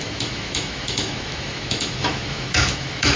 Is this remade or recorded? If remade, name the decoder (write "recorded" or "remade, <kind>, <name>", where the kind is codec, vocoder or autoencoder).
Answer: remade, autoencoder, DAC-VAE